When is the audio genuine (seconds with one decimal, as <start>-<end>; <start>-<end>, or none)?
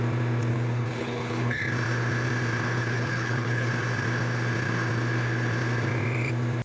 0.0-0.5; 1.6-2.8; 3.7-6.6